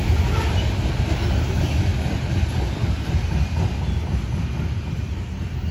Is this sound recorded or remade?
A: recorded